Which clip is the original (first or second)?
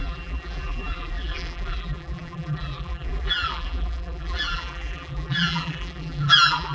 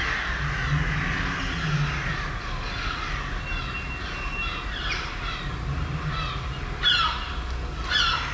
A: second